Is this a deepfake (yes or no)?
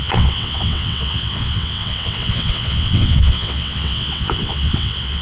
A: yes